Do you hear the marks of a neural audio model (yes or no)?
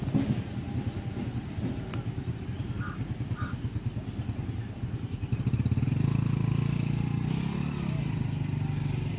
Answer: no